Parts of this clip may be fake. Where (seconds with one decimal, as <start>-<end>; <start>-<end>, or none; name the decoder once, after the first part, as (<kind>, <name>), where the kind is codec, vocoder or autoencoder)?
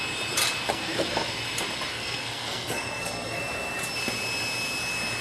0.7-1.3 (codec, SNAC); 1.9-3.4